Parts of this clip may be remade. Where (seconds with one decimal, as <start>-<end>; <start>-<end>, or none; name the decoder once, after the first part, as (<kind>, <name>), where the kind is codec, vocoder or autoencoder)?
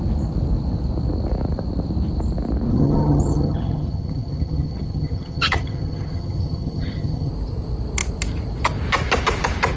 2.7-7.3 (vocoder, HiFi-GAN)